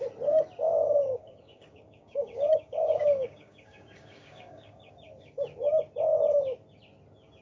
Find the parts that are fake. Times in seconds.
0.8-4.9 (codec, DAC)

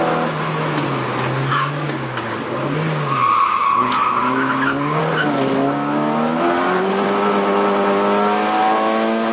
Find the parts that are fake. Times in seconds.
1.5-5.0 (codec, DAC)

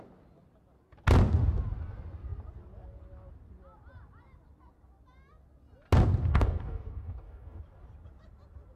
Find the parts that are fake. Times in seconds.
6.3-7.6 (codec, DAC)

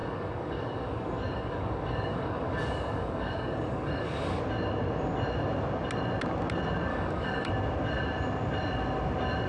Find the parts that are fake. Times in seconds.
0.0-4.4 (codec, DAC); 6.9-7.5

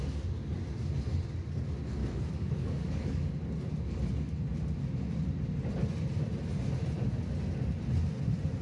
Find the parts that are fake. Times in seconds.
2.0-3.3 (codec, DAC)

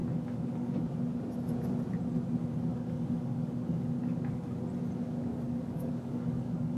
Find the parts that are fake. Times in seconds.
0.0-0.9 (codec, DAC); 2.7-4.6; 5.3-6.8

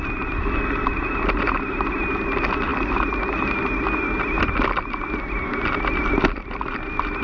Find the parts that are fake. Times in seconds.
none

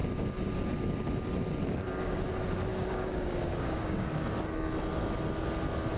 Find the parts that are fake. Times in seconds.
2.7-4.1 (codec, DAC)